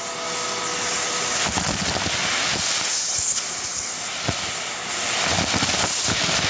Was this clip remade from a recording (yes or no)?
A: no